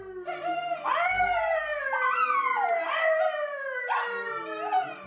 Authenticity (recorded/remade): recorded